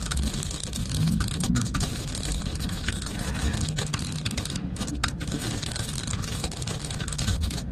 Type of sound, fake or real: fake